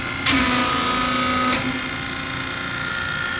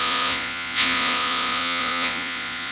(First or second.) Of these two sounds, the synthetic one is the second